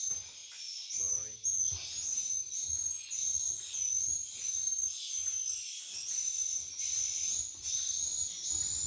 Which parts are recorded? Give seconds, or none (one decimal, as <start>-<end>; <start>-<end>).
0.0-8.9